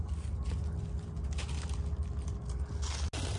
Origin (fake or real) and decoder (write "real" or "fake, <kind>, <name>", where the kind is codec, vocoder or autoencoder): real